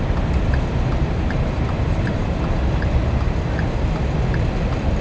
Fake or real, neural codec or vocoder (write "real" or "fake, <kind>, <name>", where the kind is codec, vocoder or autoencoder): real